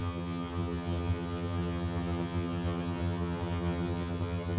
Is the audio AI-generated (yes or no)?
yes